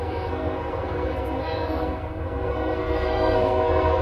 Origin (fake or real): fake